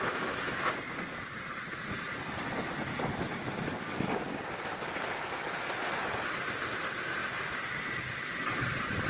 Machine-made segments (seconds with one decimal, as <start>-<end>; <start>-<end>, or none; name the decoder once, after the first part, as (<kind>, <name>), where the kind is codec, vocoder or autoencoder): 7.2-8.6 (vocoder, BigVGAN v2)